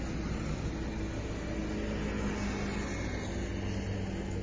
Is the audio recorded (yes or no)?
yes